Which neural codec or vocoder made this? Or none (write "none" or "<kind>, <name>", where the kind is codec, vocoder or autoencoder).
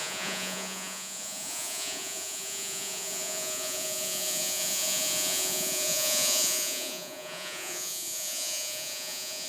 vocoder, Vocos